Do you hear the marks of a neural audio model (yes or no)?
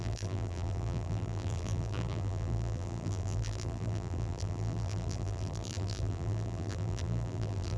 yes